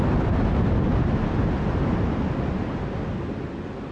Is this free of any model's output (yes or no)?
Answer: yes